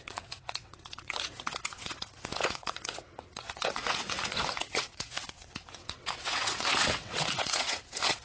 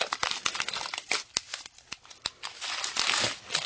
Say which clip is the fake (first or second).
first